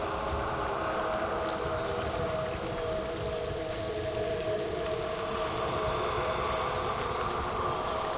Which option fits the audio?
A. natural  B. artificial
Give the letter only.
A